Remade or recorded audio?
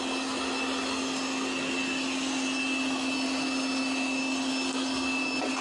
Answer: recorded